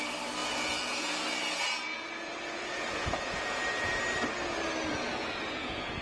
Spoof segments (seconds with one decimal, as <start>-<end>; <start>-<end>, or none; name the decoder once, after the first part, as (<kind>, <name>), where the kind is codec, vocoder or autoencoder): 0.4-4.0 (vocoder, Vocos); 4.9-6.0